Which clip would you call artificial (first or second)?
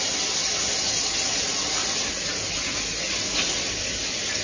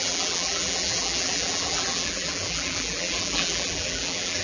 second